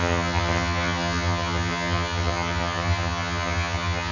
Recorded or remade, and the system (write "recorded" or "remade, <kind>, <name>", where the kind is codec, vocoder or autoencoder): remade, vocoder, HiFi-GAN